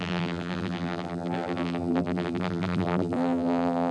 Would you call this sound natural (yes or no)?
no